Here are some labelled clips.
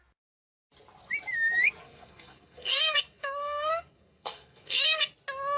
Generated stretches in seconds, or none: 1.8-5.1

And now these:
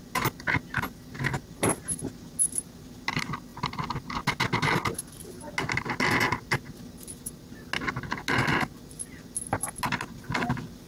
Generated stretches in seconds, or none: none

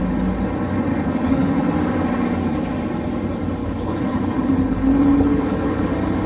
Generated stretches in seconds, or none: 0.9-1.7; 3.6-5.8

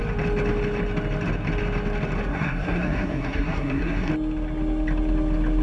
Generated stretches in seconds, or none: 2.3-4.1

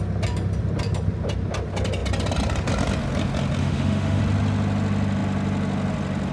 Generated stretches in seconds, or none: 3.6-4.2

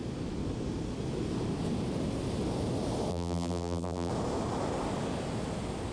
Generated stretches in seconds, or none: 3.1-4.1

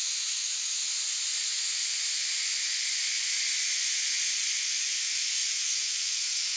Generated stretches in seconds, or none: 0.0-0.8; 4.6-6.6

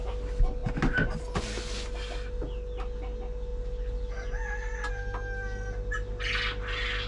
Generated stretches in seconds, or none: none